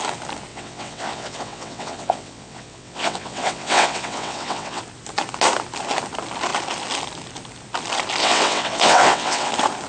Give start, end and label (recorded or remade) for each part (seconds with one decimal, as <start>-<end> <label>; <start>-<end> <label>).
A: 0.0-0.5 recorded; 0.5-4.8 remade; 4.8-8.2 recorded; 8.2-9.5 remade; 9.5-9.9 recorded